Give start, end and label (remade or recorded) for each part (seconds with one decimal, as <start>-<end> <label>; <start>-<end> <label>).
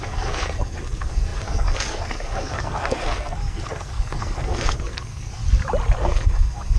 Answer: 0.0-5.4 remade; 5.4-6.0 recorded; 6.0-6.8 remade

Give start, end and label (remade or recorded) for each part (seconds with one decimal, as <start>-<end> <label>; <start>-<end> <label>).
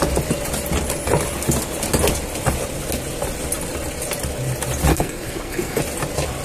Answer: 0.0-4.9 recorded; 4.9-5.8 remade; 5.8-6.4 recorded